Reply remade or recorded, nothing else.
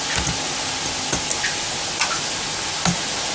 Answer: recorded